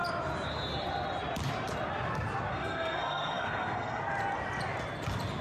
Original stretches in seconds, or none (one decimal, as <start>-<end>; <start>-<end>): 0.0-2.5; 4.0-5.4